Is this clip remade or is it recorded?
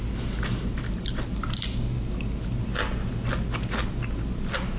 recorded